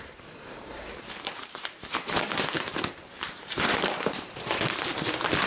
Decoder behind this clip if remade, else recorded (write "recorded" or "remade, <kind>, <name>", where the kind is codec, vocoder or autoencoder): remade, vocoder, BigVGAN v2